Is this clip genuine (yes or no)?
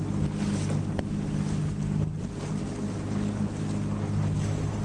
yes